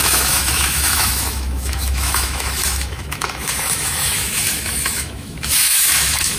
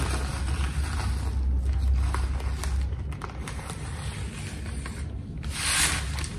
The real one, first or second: second